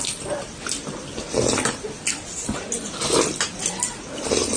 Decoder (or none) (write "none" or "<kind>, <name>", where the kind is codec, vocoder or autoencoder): none